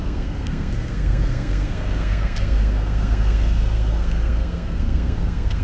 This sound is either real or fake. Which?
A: fake